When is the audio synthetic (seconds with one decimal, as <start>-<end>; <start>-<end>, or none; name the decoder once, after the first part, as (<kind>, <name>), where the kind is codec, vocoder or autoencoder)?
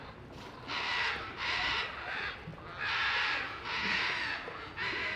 none